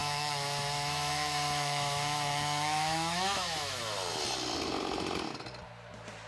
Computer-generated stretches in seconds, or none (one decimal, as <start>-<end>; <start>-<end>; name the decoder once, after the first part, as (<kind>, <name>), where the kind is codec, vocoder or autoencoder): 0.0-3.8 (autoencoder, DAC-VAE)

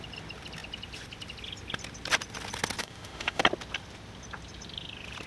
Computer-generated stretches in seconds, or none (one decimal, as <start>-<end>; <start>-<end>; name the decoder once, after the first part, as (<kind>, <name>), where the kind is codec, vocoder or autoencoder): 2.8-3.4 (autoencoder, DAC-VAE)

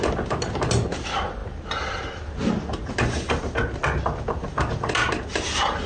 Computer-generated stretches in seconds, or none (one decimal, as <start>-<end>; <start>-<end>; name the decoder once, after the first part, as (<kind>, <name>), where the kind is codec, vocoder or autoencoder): none

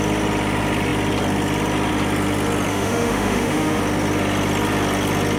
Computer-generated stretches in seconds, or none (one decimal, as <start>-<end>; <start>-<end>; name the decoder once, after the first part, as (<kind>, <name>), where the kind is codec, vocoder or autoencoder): 2.7-3.8 (autoencoder, DAC-VAE)

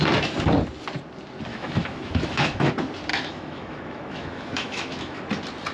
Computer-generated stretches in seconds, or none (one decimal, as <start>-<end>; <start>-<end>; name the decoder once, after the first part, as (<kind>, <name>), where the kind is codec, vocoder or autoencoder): 1.5-2.7 (autoencoder, DAC-VAE); 3.1-5.2